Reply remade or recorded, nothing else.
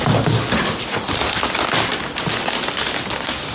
recorded